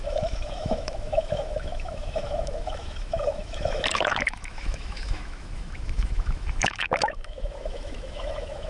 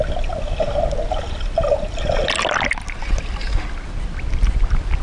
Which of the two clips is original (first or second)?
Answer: second